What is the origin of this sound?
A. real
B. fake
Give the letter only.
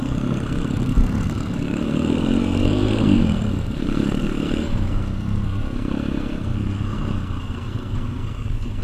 B